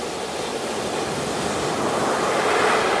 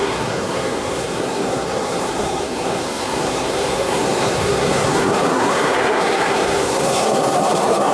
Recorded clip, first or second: first